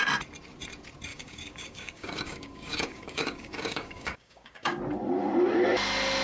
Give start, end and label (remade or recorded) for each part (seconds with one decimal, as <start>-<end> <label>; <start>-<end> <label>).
0.0-1.1 recorded; 1.1-4.8 remade; 4.8-6.2 recorded